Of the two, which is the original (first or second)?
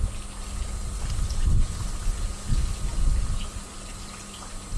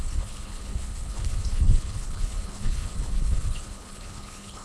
first